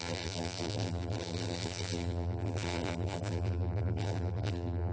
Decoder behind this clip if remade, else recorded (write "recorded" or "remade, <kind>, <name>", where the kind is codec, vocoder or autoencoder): remade, vocoder, BigVGAN v2